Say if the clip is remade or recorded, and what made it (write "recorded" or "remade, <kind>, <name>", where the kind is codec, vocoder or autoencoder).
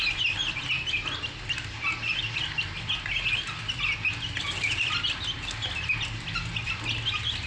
recorded